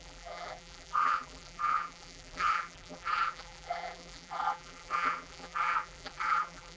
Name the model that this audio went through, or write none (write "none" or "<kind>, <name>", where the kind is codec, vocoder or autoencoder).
vocoder, BigVGAN v2